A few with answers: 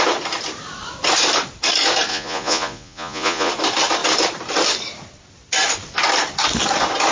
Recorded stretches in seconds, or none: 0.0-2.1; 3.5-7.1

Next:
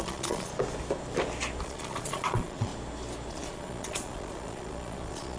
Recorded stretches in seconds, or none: 0.5-1.6; 2.7-3.3

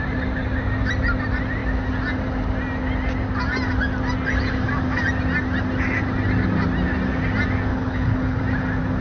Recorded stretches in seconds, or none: 0.0-7.7; 8.4-9.0

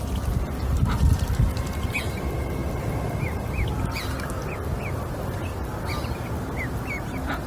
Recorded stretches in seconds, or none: 0.0-5.5; 6.6-7.5

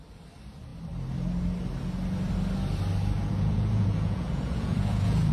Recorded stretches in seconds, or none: 0.0-3.2